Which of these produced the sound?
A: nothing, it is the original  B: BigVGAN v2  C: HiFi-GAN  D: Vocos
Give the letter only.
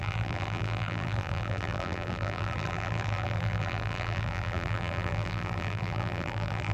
B